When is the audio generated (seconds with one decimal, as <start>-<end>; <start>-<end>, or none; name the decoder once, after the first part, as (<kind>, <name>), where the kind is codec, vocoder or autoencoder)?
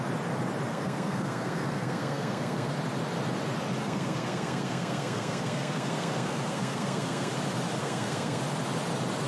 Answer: 0.7-2.7 (codec, SNAC); 3.8-7.3; 7.8-8.4